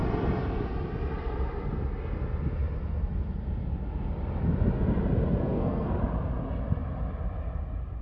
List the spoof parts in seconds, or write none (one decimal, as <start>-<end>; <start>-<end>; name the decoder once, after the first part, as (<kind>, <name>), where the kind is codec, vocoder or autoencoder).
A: 5.4-6.0 (codec, SNAC)